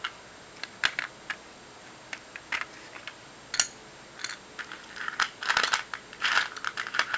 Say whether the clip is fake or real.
real